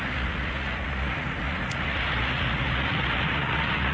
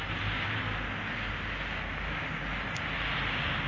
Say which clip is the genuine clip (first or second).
second